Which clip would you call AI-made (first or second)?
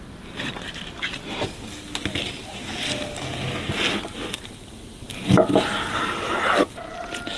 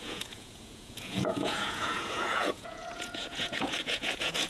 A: second